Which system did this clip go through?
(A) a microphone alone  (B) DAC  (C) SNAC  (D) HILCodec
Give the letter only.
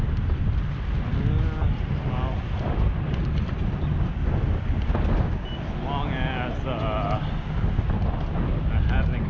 A